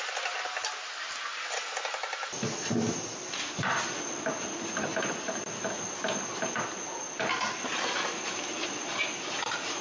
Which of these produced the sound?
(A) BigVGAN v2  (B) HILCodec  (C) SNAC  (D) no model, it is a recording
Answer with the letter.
D